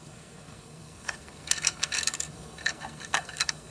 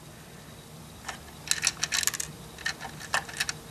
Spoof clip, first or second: first